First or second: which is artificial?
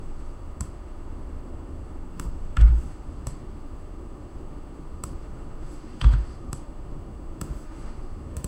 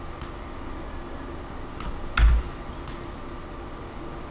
first